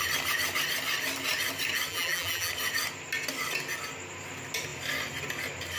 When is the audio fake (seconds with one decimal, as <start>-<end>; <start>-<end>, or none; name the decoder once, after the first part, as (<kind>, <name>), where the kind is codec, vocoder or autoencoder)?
1.9-2.5 (vocoder, BigVGAN v2)